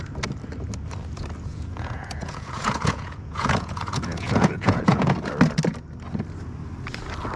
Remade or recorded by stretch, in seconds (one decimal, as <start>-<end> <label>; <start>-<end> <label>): 0.0-1.5 recorded; 1.5-5.3 remade; 5.3-7.4 recorded